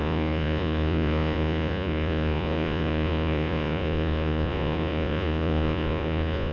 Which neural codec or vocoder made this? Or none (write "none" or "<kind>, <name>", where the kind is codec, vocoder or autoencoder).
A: vocoder, Vocos